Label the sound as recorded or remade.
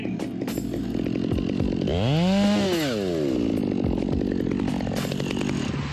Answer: recorded